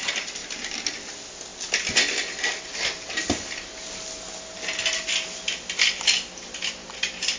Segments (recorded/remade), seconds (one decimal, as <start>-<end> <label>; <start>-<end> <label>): 0.0-7.4 recorded